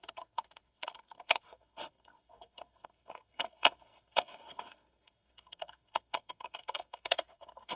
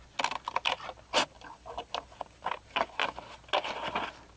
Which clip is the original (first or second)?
second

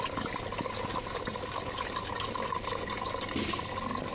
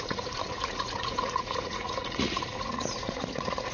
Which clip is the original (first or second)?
first